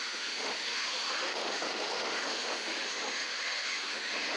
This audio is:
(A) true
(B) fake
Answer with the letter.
B